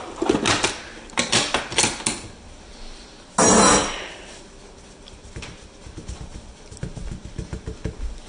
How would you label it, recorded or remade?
recorded